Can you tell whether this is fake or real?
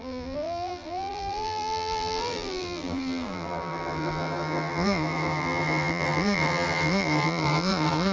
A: fake